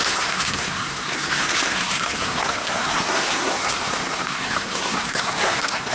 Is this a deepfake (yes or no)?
yes